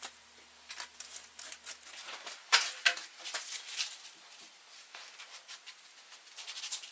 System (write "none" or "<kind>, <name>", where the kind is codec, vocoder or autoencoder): none